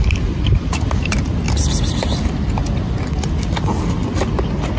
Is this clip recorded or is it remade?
recorded